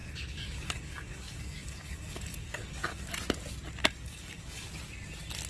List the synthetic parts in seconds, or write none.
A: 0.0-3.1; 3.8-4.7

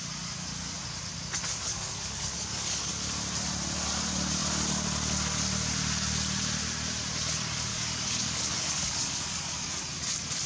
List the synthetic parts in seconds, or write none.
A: 1.7-2.9; 7.7-9.8

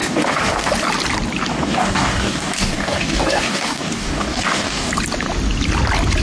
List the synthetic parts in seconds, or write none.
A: 0.0-0.7; 1.5-4.9

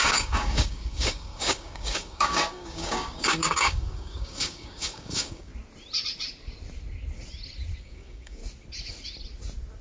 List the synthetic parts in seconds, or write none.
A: 0.0-5.5; 7.8-8.4

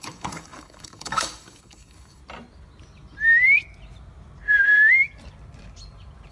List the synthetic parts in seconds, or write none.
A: 0.0-2.2

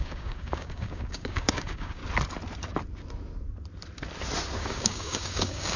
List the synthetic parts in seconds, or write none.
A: 0.0-2.0; 4.6-5.8

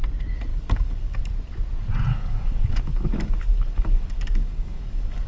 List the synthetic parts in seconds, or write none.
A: 0.5-1.2; 2.1-5.3

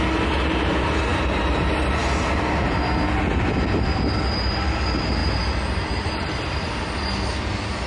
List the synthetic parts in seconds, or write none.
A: none